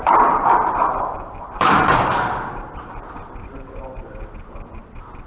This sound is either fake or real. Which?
fake